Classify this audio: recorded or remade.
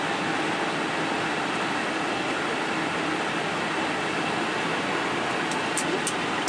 recorded